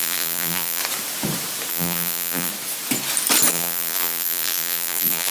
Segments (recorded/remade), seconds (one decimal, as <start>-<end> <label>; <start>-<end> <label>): 0.0-0.8 remade; 0.8-1.7 recorded; 1.7-2.5 remade; 2.5-3.5 recorded; 3.5-5.3 remade